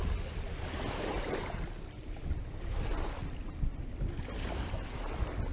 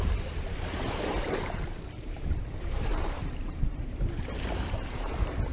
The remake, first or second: second